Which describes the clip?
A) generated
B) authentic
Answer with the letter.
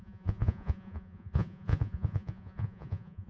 A